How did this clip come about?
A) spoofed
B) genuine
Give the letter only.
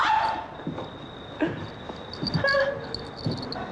B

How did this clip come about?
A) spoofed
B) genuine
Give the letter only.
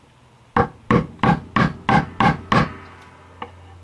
B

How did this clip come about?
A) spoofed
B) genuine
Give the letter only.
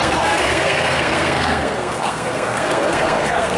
A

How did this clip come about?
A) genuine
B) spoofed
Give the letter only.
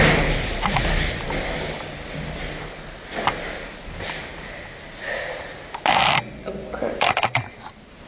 A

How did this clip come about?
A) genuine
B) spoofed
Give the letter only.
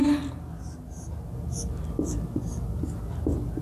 A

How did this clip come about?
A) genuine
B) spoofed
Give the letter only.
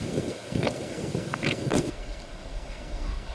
B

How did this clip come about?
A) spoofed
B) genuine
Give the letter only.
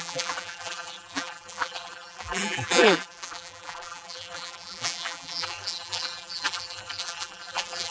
A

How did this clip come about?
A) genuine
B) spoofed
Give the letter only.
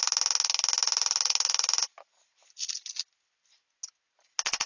A